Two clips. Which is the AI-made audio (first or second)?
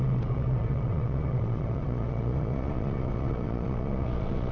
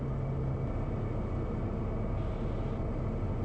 first